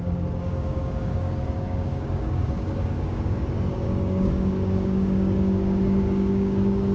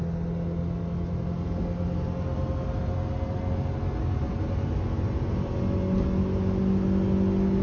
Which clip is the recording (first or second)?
second